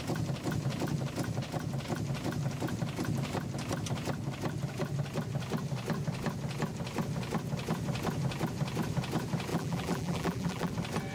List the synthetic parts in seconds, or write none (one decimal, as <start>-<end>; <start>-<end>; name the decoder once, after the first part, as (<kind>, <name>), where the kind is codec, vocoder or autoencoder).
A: 9.5-10.7 (vocoder, BigVGAN v2)